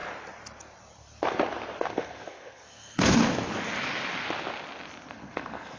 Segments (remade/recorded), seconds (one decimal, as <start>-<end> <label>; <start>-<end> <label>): 0.0-1.8 recorded; 1.8-3.2 remade; 3.2-5.1 recorded; 5.1-5.8 remade